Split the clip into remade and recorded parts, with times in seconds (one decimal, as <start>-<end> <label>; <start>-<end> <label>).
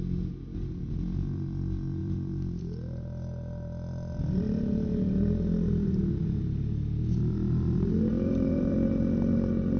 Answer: 0.0-2.0 recorded; 2.0-2.6 remade; 2.6-8.1 recorded; 8.1-8.9 remade; 8.9-9.8 recorded